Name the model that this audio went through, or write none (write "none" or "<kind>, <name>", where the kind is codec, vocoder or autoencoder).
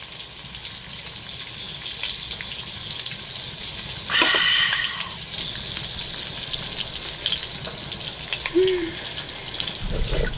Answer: none